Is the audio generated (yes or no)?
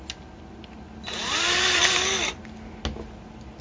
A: no